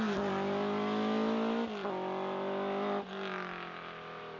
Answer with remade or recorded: recorded